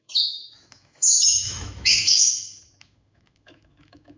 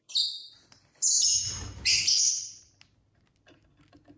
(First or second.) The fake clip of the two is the first